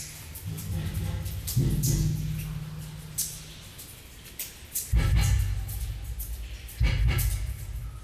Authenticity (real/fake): real